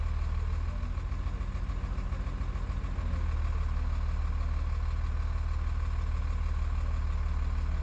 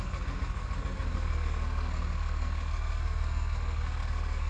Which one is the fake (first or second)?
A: second